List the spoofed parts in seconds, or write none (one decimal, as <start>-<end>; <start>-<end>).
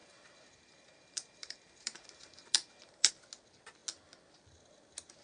0.0-3.1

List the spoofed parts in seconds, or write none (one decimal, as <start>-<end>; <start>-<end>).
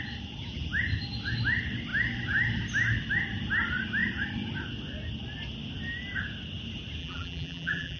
7.0-8.0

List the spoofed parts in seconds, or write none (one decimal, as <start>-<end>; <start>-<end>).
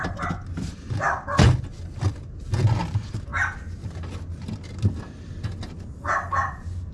none